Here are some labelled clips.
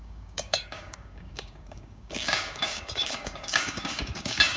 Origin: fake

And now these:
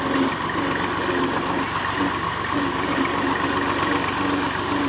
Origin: real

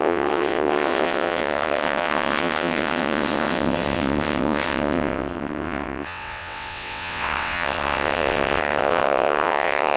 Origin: fake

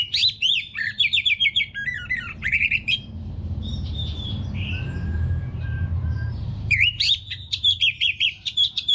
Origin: fake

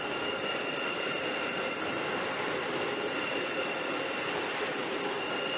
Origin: fake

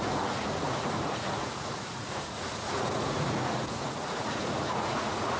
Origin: fake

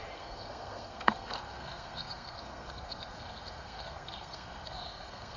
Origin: fake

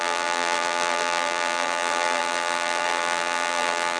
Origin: fake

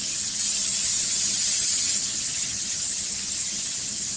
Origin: fake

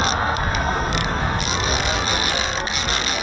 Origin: fake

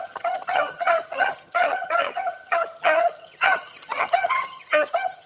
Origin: fake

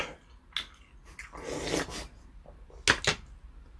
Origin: real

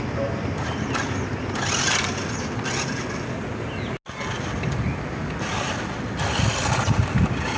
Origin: real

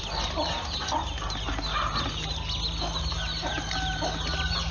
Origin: real